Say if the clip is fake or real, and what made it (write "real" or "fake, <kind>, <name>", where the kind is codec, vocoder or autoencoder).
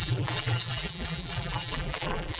fake, vocoder, BigVGAN v2